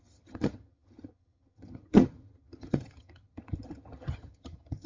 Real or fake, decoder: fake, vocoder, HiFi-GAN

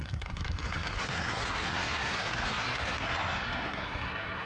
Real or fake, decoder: fake, codec, SNAC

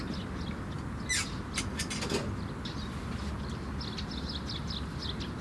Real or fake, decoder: real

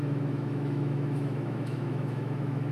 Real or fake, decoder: fake, autoencoder, DAC-VAE